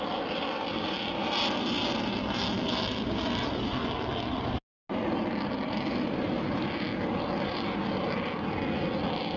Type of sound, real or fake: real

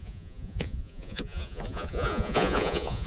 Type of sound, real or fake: fake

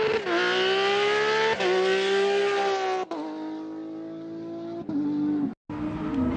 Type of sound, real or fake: real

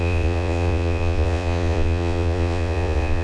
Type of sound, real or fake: fake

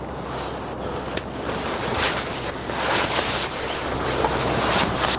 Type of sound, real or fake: real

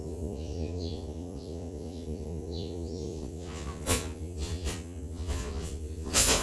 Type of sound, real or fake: fake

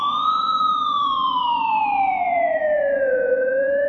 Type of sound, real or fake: fake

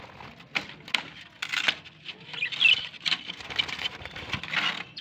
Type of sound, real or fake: real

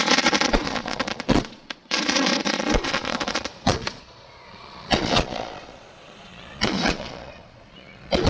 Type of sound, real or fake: fake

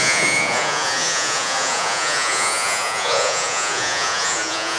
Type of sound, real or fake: fake